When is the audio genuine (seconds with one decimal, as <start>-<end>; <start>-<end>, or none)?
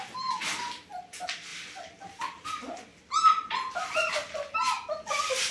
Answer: 0.0-5.5